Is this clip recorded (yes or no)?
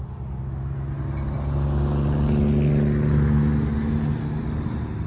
yes